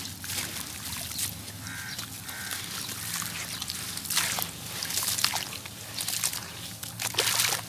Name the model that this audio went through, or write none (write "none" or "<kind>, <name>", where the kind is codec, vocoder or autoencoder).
none